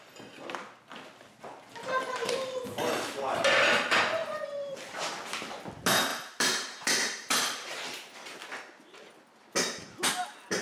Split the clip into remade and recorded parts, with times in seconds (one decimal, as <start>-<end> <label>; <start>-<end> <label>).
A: 0.0-4.2 recorded; 4.2-5.1 remade; 5.1-6.1 recorded; 6.1-7.7 remade; 7.7-10.6 recorded